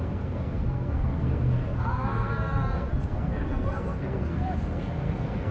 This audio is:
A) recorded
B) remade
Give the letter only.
B